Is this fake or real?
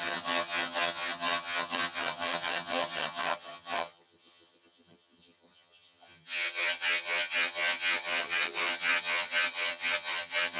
fake